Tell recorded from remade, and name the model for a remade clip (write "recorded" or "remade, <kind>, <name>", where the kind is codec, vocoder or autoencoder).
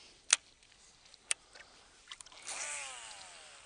recorded